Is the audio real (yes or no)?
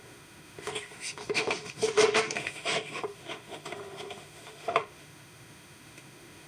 no